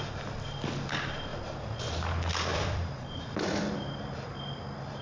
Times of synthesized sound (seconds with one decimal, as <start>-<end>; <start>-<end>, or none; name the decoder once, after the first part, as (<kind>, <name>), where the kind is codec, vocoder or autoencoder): 2.5-3.2 (vocoder, BigVGAN v2)